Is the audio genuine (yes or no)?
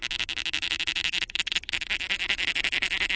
yes